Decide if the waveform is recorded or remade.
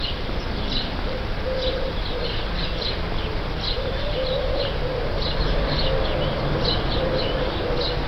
recorded